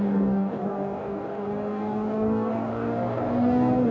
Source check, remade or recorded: remade